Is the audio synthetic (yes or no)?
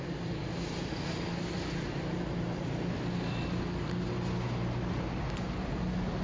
no